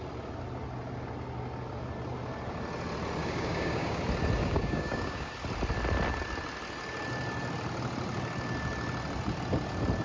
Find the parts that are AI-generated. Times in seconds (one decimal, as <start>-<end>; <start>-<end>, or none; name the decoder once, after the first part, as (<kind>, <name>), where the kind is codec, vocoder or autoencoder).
3.2-4.0 (codec, DAC); 4.4-5.3

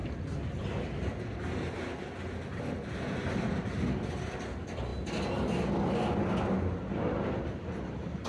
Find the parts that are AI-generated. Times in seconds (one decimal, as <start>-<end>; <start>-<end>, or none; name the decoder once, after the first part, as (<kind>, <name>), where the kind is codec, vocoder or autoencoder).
none

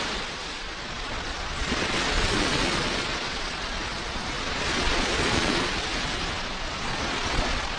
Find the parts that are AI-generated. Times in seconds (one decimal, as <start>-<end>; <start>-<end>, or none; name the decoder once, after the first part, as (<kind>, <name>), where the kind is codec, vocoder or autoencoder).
0.0-3.9 (vocoder, Vocos); 4.4-5.9; 6.4-7.8

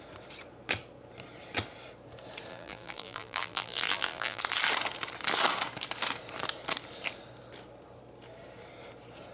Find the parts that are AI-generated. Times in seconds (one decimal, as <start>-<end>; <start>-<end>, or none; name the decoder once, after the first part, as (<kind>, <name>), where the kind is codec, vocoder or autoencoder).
2.5-4.4 (vocoder, BigVGAN v2)